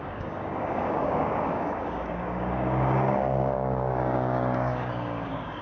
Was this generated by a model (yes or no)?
yes